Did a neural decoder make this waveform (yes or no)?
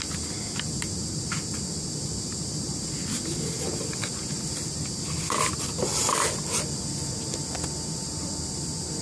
no